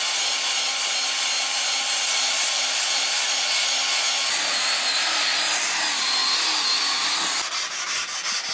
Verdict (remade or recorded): recorded